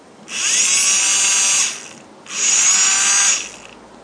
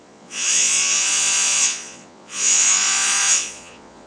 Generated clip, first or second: second